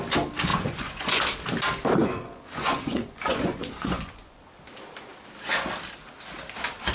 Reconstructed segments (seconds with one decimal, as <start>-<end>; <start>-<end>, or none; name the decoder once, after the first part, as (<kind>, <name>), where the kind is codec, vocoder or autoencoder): 0.5-1.2 (vocoder, Vocos); 2.0-4.4